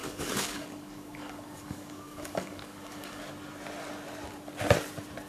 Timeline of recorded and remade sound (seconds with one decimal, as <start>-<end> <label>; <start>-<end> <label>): 0.0-3.2 remade; 3.2-5.3 recorded

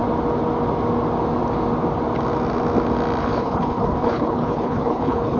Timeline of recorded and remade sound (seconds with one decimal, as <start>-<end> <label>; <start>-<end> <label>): 0.0-3.2 recorded; 3.2-5.4 remade

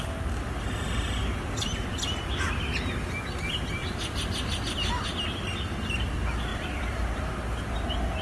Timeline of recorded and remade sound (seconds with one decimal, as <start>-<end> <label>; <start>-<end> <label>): 0.0-3.8 recorded; 3.8-4.6 remade; 4.6-6.5 recorded; 6.5-7.3 remade; 7.3-8.2 recorded

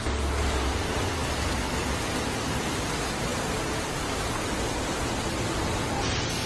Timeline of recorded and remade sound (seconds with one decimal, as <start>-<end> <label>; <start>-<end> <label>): 0.0-5.0 recorded; 5.0-5.9 remade; 5.9-6.5 recorded

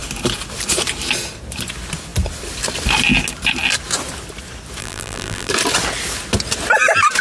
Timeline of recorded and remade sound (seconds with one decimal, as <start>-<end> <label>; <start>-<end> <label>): 0.0-4.8 recorded; 4.8-5.5 remade; 5.5-7.2 recorded